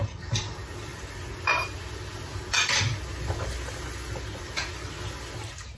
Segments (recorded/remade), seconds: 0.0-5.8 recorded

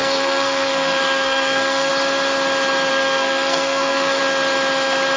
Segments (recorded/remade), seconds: 0.0-1.9 remade; 1.9-2.9 recorded; 2.9-4.2 remade; 4.2-5.2 recorded

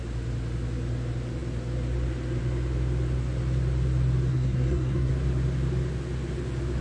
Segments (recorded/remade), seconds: 0.0-4.3 recorded; 4.3-5.1 remade; 5.1-6.8 recorded

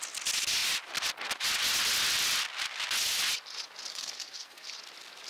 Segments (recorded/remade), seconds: 0.0-3.9 recorded; 3.9-4.7 remade; 4.7-5.3 recorded

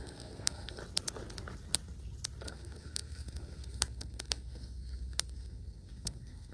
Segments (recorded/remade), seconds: 0.0-0.8 remade; 0.8-2.4 recorded; 2.4-6.5 remade

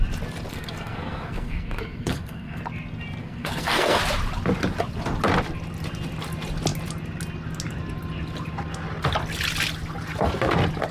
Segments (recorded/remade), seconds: 0.0-0.5 recorded; 0.5-2.6 remade; 2.6-3.2 recorded; 3.2-4.0 remade; 4.0-10.9 recorded